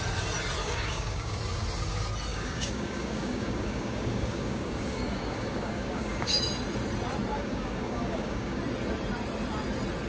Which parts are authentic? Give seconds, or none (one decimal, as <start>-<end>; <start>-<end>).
0.0-0.6; 1.4-2.3; 6.4-7.3; 8.6-10.1